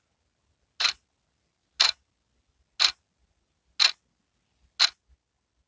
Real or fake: real